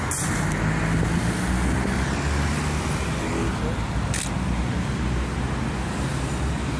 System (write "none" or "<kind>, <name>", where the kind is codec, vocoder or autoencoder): none